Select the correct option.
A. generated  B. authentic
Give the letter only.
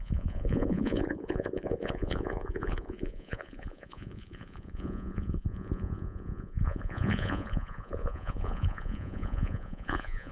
A